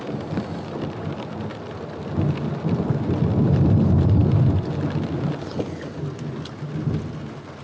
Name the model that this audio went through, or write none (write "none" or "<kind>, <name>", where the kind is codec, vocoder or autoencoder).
none